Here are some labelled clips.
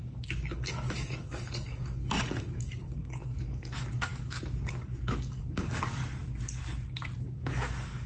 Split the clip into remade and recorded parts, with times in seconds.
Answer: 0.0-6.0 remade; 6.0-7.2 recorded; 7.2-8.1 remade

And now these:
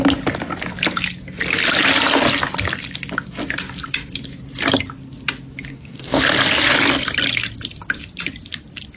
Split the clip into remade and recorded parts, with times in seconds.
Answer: 0.0-5.7 recorded; 5.7-6.2 remade; 6.2-9.0 recorded